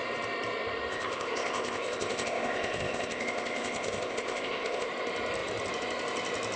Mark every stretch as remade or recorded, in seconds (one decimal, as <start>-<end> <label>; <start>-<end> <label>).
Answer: 0.0-0.9 recorded; 0.9-4.9 remade; 4.9-6.6 recorded